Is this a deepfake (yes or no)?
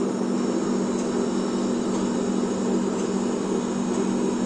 no